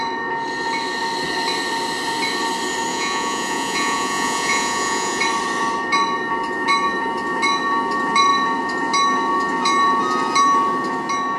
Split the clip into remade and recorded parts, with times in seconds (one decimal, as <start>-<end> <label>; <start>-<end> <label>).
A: 0.0-2.9 recorded; 2.9-5.2 remade; 5.2-11.4 recorded